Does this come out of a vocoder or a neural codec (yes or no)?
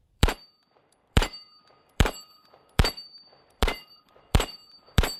yes